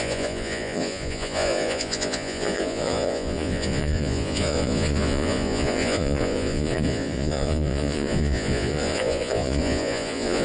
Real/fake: fake